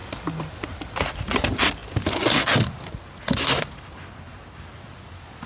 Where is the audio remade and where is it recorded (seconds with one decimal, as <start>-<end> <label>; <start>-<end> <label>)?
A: 0.0-1.2 remade; 1.2-1.8 recorded; 1.8-2.9 remade; 2.9-5.5 recorded